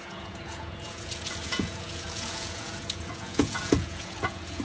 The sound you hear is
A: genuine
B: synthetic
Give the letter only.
B